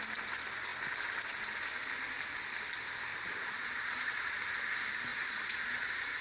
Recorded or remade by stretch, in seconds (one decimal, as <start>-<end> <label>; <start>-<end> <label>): 0.0-3.1 recorded; 3.1-4.4 remade; 4.4-5.1 recorded; 5.1-6.2 remade